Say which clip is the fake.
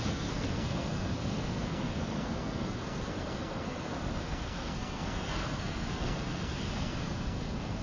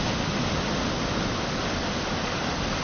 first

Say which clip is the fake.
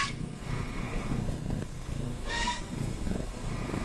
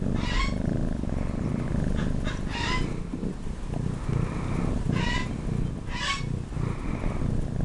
first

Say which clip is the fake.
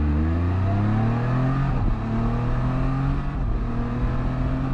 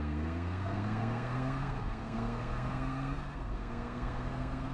second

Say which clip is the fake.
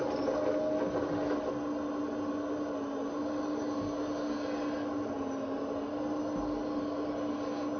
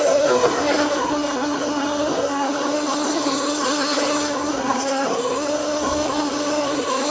second